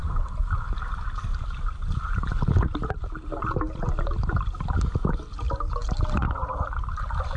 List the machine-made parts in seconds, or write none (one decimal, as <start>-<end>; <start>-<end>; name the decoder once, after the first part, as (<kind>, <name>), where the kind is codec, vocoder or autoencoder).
none